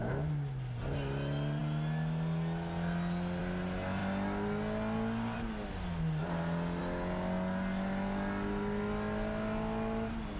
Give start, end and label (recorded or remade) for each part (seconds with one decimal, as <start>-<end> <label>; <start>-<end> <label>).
0.0-10.4 recorded